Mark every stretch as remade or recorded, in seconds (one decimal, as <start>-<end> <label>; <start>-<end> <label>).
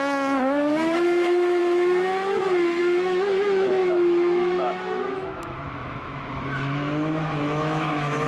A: 0.0-1.6 remade; 1.6-2.8 recorded; 2.8-8.3 remade